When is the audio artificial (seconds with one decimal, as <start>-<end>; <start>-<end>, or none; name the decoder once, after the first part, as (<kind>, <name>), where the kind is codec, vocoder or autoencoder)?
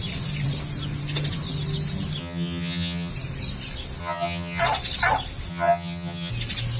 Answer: 2.2-3.1 (vocoder, HiFi-GAN); 4.0-4.6; 5.5-6.3